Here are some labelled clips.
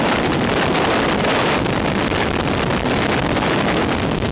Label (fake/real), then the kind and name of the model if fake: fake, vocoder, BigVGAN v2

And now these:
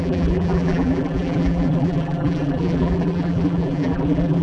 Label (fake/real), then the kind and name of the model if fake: fake, vocoder, BigVGAN v2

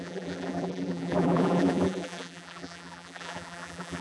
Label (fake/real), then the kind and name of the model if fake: fake, vocoder, BigVGAN v2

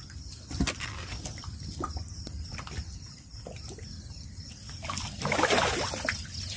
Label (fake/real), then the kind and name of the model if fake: fake, vocoder, BigVGAN v2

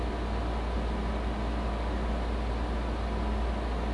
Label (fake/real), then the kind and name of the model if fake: real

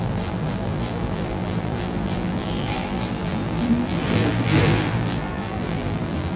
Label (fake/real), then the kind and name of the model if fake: fake, vocoder, BigVGAN v2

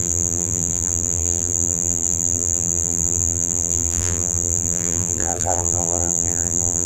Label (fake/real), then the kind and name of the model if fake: fake, vocoder, BigVGAN v2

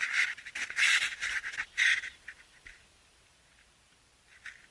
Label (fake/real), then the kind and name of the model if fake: fake, vocoder, BigVGAN v2